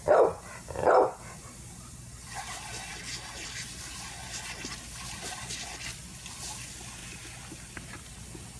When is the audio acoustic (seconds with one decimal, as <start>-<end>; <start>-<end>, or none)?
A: 0.0-8.6